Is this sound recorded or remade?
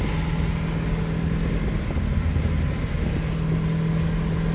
recorded